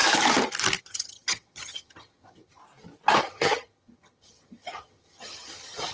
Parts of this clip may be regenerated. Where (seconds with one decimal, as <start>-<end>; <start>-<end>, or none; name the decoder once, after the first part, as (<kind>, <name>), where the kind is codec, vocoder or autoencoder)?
0.8-2.6 (vocoder, HiFi-GAN); 3.2-5.9